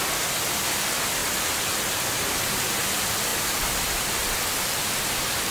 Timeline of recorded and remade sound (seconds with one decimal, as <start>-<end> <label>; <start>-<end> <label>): 0.0-5.5 recorded